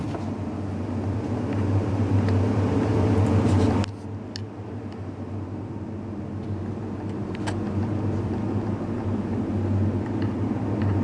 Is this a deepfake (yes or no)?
no